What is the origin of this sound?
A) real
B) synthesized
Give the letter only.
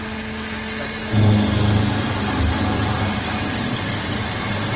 A